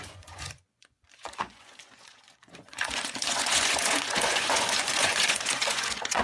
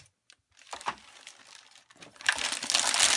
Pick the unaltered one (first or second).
second